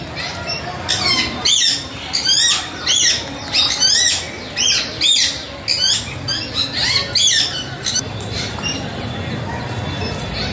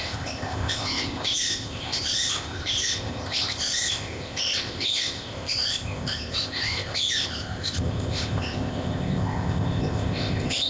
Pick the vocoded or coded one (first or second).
second